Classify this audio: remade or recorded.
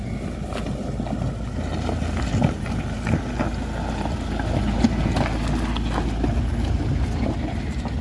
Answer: recorded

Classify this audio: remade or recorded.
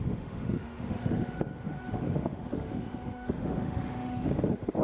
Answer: remade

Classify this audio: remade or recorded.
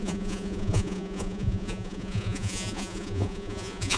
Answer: remade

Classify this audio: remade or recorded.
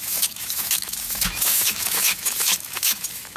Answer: remade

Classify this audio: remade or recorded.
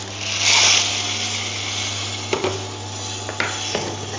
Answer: recorded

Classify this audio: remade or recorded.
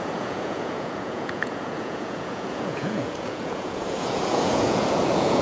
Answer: remade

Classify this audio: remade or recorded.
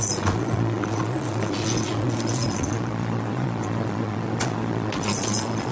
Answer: remade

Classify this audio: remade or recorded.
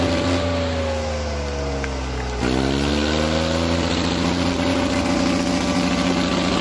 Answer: recorded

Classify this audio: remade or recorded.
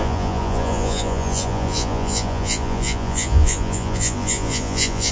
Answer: remade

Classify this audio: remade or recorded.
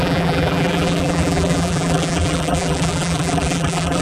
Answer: remade